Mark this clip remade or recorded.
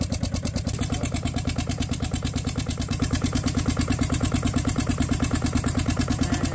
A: remade